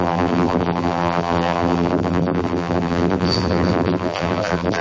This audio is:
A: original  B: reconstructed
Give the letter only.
B